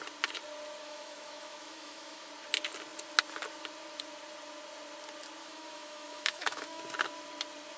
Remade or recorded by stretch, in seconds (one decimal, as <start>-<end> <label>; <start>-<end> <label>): 0.0-0.8 recorded; 0.8-2.3 remade; 2.3-5.4 recorded; 5.4-6.8 remade; 6.8-7.8 recorded

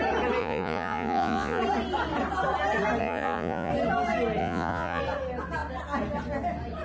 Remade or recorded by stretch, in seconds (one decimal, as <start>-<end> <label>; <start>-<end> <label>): 0.0-0.4 recorded; 0.4-1.6 remade; 1.6-3.0 recorded; 3.0-3.7 remade; 3.7-4.4 recorded; 4.4-5.0 remade; 5.0-6.8 recorded

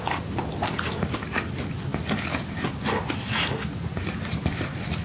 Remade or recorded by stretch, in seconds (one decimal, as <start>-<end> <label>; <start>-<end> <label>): 0.0-5.0 recorded

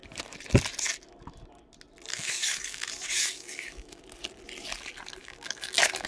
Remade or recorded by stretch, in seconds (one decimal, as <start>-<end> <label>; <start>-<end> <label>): 0.0-2.1 recorded; 2.1-4.0 remade; 4.0-5.2 recorded; 5.2-6.1 remade

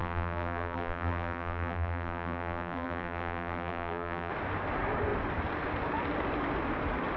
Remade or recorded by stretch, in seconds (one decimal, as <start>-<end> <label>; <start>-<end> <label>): 0.0-4.3 remade; 4.3-7.2 recorded

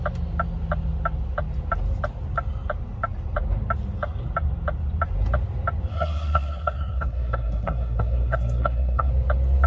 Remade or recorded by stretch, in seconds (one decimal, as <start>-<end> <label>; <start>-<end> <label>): 0.0-5.9 recorded; 5.9-9.1 remade; 9.1-9.7 recorded

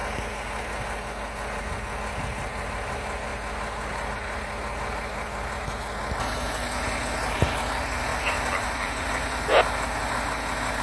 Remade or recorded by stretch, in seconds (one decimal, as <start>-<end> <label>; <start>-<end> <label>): 0.0-8.1 recorded; 8.1-10.1 remade; 10.1-10.8 recorded